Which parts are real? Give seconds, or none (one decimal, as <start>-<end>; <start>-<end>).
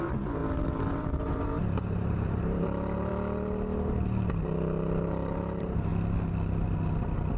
0.4-0.9; 3.1-5.0; 5.9-7.4